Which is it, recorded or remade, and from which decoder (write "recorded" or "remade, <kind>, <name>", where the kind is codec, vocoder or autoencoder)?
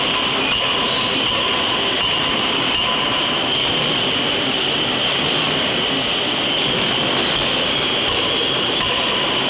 recorded